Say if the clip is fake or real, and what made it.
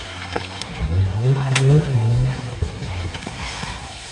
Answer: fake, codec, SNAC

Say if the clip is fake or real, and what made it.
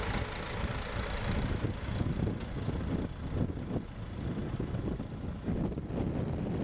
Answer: real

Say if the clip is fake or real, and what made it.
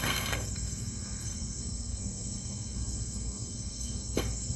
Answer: fake, codec, SNAC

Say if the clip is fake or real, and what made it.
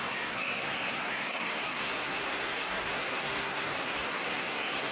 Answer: fake, codec, SNAC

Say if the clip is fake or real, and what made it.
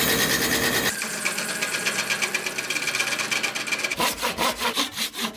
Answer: real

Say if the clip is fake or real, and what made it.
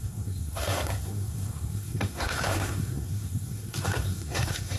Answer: fake, codec, SNAC